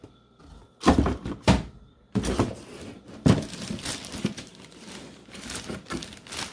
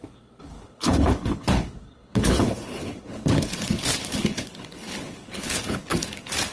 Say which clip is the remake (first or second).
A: second